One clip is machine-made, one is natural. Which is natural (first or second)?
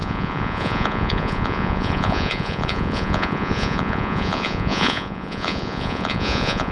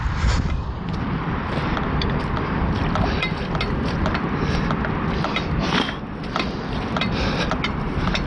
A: second